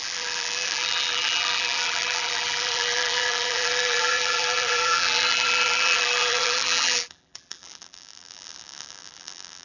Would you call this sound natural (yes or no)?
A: no